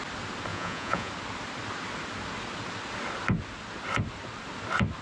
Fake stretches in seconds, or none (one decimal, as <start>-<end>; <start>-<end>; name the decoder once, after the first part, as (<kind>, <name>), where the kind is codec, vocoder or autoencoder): 0.5-1.1 (vocoder, Vocos)